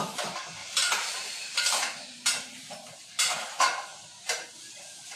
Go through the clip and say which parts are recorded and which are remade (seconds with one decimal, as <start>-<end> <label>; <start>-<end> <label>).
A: 0.0-0.6 recorded; 0.6-3.1 remade; 3.1-3.9 recorded; 3.9-4.5 remade; 4.5-5.2 recorded

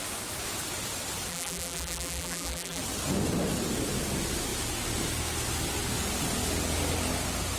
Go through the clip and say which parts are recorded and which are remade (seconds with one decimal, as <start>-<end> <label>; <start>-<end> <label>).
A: 0.0-1.3 recorded; 1.3-2.8 remade; 2.8-7.6 recorded

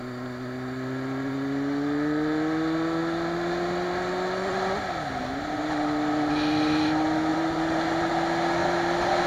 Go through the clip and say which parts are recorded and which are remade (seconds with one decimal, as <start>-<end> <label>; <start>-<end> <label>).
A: 0.0-7.3 recorded; 7.3-8.1 remade; 8.1-8.6 recorded; 8.6-9.3 remade

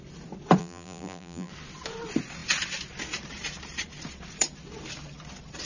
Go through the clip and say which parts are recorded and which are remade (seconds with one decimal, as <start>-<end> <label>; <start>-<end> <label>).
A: 0.0-0.6 recorded; 0.6-1.5 remade; 1.5-5.7 recorded

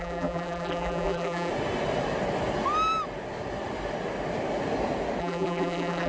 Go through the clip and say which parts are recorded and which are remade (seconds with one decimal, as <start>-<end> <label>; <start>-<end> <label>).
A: 0.0-1.5 remade; 1.5-5.2 recorded; 5.2-6.1 remade